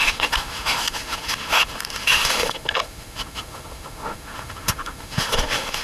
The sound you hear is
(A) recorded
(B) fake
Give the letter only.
B